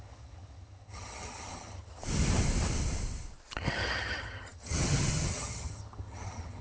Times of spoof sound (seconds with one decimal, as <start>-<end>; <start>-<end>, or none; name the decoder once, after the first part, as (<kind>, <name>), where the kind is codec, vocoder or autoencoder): 0.0-2.0 (vocoder, HiFi-GAN); 3.6-6.6